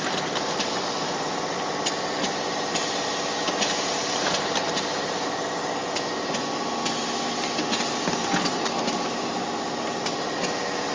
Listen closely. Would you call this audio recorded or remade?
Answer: recorded